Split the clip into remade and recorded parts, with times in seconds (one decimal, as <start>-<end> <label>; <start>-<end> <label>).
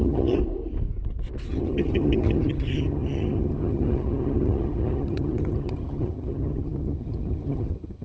0.0-0.4 remade; 0.4-1.5 recorded; 1.5-8.0 remade